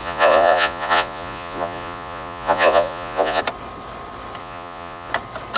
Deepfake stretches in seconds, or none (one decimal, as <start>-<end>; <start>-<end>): 0.0-3.4; 4.4-5.1